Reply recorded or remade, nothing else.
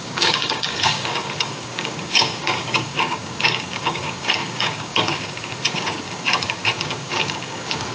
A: remade